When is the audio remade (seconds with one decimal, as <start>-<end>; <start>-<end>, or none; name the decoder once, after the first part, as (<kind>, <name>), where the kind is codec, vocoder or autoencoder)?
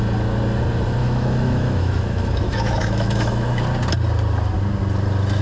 1.0-3.6 (autoencoder, DAC-VAE)